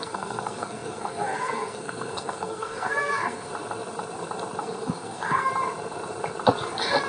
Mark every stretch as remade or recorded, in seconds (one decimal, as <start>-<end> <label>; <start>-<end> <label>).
0.0-3.5 remade; 3.5-4.6 recorded; 4.6-5.5 remade; 5.5-7.1 recorded